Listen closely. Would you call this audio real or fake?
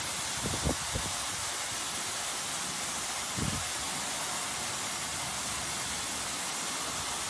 real